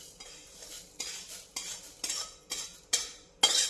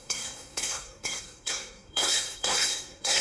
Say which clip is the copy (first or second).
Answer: second